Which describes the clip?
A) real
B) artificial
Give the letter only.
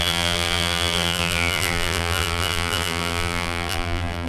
B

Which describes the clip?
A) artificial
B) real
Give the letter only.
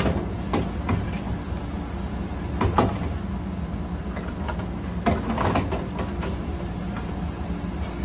B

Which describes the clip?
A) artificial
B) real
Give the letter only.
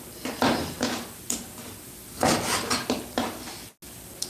B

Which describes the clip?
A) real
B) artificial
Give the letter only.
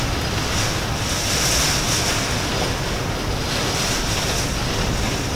A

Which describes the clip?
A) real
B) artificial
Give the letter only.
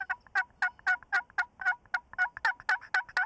A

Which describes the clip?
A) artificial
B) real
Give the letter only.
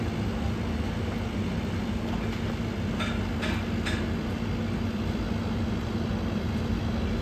B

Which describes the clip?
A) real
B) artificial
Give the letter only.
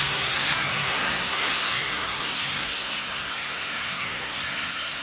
B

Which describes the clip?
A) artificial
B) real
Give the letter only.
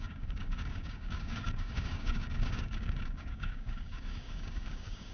A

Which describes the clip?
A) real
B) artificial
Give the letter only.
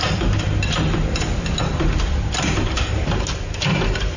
B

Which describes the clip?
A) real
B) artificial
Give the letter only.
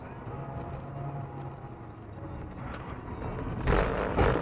A